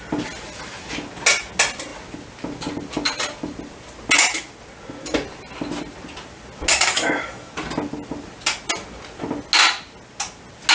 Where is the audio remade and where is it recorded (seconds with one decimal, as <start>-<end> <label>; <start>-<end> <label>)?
0.0-6.7 recorded; 6.7-7.5 remade; 7.5-10.7 recorded